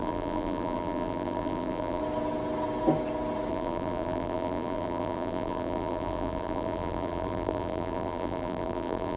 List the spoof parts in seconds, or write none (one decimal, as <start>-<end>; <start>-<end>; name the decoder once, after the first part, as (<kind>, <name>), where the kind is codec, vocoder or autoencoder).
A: 0.0-2.0 (vocoder, BigVGAN v2); 3.5-9.2